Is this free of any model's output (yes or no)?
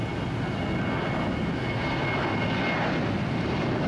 yes